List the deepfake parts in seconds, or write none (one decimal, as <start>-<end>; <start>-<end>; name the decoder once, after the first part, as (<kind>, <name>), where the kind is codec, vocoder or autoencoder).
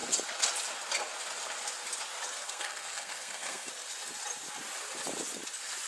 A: 2.4-3.7 (codec, SNAC)